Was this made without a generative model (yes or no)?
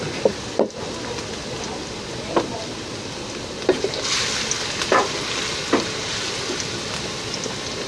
yes